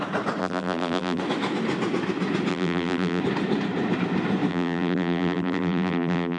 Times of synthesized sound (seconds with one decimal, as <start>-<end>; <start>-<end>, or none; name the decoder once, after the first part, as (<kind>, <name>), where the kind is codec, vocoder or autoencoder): 0.4-1.2 (vocoder, BigVGAN v2); 2.5-3.2; 4.5-6.4

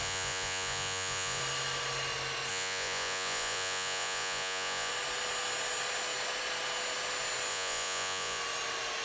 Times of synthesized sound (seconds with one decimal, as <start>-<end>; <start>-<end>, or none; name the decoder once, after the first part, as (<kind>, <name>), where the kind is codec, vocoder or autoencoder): 0.0-1.4 (vocoder, Vocos); 2.5-4.9; 7.5-8.4